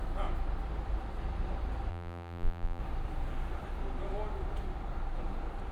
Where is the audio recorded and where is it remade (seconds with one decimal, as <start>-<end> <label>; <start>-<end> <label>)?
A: 0.0-1.9 recorded; 1.9-2.8 remade; 2.8-5.7 recorded